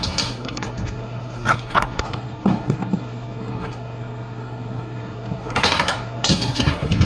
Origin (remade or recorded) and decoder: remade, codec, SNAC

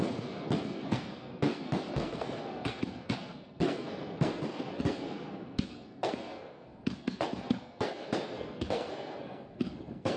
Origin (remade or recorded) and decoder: remade, codec, SNAC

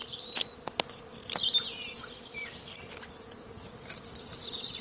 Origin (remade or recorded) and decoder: recorded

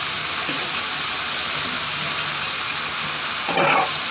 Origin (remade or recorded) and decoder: recorded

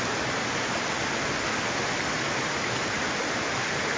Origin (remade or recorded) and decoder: recorded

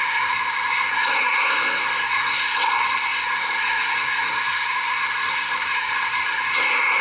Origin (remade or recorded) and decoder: remade, codec, SNAC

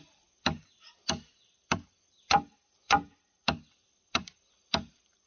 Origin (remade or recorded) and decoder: remade, vocoder, BigVGAN v2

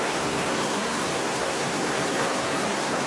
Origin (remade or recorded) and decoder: remade, codec, SNAC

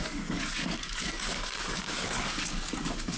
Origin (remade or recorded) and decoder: remade, codec, DAC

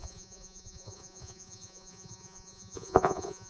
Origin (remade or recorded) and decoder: remade, vocoder, Vocos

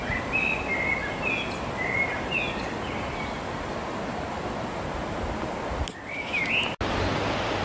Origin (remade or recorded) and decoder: recorded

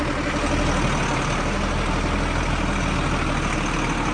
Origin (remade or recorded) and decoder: recorded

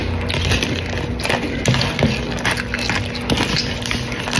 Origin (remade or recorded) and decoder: recorded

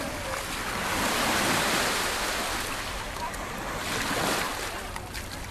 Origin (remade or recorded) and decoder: recorded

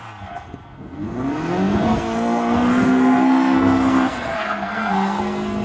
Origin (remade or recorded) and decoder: remade, codec, SNAC